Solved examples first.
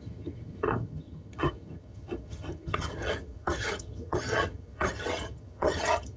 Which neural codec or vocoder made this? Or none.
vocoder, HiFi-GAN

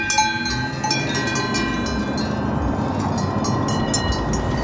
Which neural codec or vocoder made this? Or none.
none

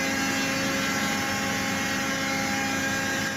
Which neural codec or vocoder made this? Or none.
none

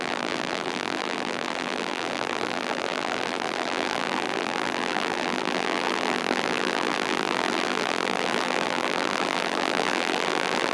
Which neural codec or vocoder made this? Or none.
vocoder, BigVGAN v2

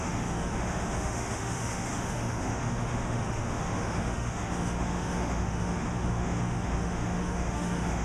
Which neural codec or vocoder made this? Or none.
autoencoder, DAC-VAE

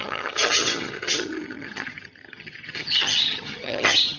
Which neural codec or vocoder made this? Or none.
vocoder, HiFi-GAN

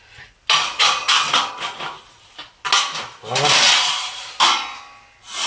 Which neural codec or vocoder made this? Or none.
none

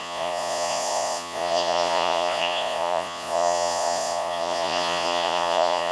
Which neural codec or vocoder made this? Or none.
vocoder, Vocos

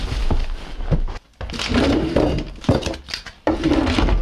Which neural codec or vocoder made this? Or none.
none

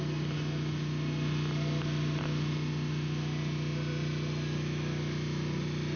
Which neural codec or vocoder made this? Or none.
none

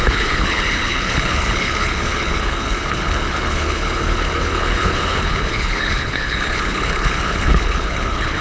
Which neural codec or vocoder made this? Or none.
codec, HILCodec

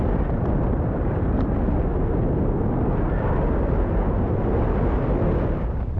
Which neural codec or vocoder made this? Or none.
none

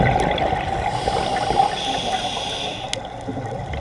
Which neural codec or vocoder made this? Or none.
none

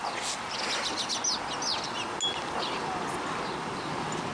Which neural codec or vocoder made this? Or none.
none